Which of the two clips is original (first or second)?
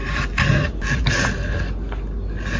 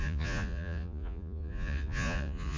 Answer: first